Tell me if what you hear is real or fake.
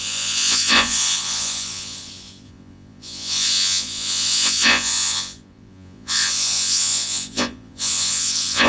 fake